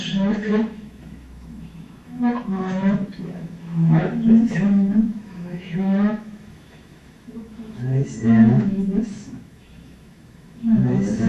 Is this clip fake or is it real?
fake